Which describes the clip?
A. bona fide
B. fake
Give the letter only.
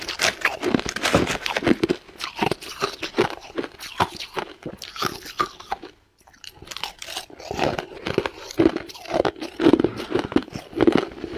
A